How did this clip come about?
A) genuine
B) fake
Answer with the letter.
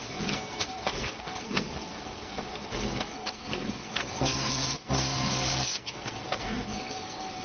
B